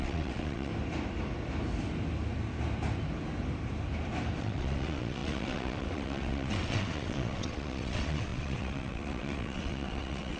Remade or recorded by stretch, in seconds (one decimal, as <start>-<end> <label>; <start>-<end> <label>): 0.0-0.7 remade; 0.7-4.4 recorded; 4.4-10.4 remade